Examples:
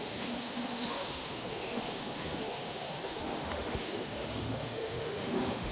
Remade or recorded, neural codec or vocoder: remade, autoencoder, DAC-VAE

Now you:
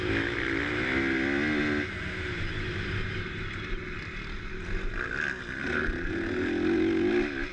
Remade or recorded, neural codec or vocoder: recorded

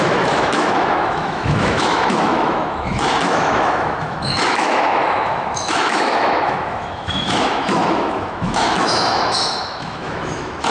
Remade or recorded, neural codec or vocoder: remade, autoencoder, DAC-VAE